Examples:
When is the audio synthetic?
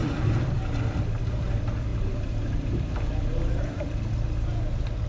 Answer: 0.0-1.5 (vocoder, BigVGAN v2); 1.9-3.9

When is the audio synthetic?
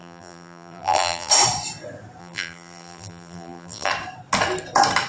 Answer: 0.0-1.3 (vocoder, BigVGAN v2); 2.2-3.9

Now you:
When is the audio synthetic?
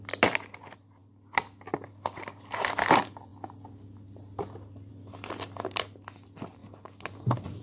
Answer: 0.0-6.6 (vocoder, BigVGAN v2)